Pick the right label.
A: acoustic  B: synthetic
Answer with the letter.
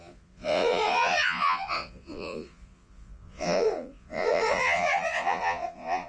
B